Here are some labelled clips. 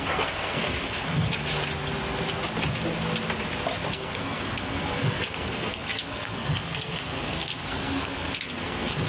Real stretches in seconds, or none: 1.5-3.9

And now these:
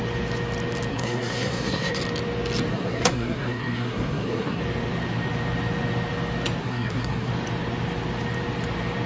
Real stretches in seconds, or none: 0.0-0.9; 2.0-2.7; 4.6-6.6; 7.3-9.1

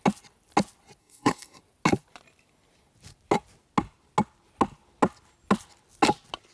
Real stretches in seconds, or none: 0.0-1.0; 1.6-6.5